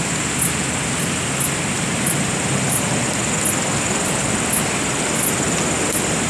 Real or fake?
real